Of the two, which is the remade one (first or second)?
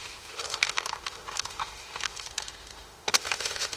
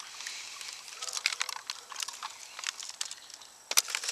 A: first